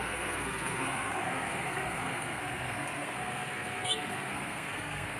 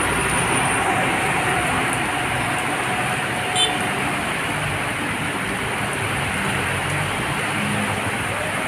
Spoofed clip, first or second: first